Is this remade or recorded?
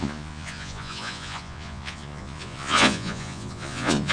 remade